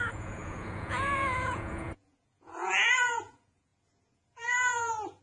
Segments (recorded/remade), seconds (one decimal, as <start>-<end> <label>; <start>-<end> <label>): 0.0-5.2 remade